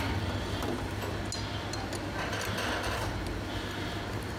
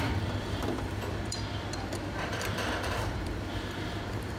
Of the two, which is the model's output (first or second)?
second